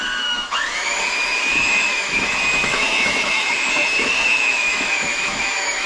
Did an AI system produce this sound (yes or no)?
yes